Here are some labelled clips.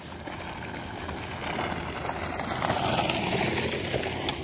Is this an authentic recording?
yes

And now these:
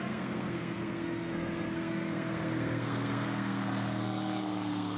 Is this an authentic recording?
no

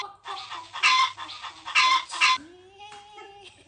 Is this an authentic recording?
yes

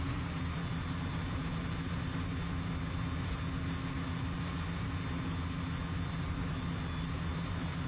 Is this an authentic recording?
yes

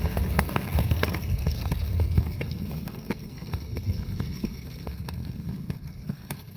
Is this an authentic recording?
no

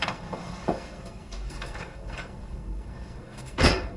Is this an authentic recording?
no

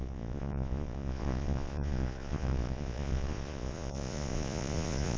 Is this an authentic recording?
no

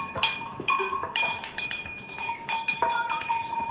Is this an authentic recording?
no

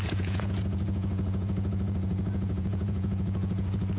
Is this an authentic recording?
no